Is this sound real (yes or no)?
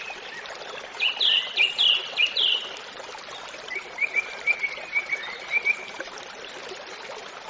no